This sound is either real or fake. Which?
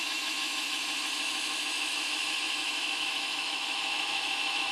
fake